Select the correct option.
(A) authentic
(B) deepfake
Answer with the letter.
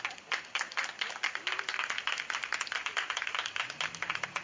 A